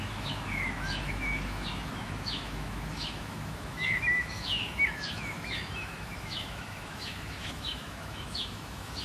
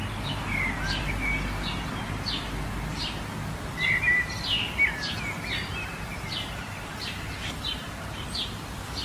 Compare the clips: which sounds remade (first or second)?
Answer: first